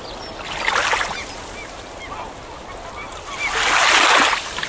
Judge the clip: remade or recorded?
recorded